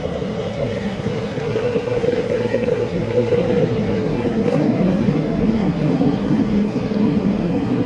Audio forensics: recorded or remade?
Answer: remade